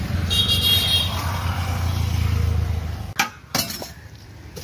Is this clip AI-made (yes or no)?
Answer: no